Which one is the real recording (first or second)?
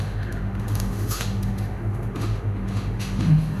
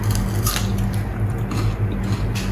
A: second